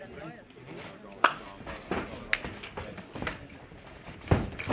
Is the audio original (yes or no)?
yes